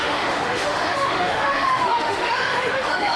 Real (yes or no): no